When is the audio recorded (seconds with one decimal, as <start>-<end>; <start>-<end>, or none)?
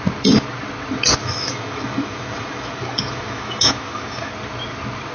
0.0-1.2; 4.3-5.1